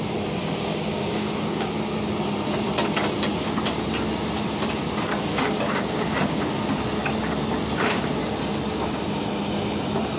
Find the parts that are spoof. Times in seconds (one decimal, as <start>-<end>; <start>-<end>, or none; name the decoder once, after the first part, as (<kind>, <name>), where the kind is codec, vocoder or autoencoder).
0.4-1.7 (codec, DAC); 5.3-6.4